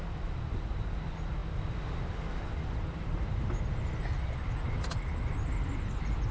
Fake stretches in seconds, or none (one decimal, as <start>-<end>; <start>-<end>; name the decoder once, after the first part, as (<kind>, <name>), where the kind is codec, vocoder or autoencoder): none